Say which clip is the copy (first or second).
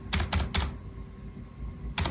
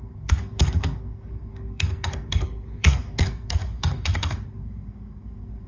second